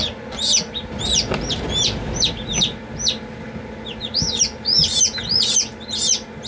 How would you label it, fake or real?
real